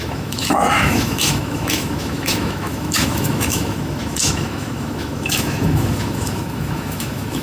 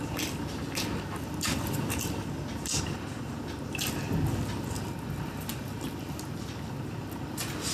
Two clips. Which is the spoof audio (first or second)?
first